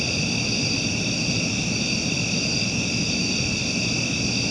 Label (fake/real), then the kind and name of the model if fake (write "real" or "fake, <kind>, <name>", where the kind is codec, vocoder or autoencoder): real